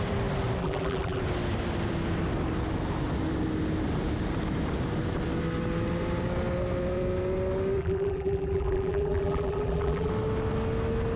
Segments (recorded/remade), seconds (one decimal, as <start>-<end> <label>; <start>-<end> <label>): 0.0-0.6 recorded; 0.6-1.2 remade; 1.2-7.8 recorded; 7.8-10.1 remade; 10.1-11.2 recorded